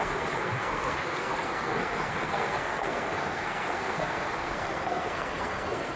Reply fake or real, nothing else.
fake